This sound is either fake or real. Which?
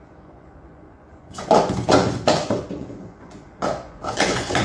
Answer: fake